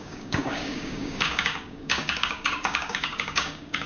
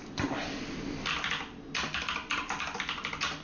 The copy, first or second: first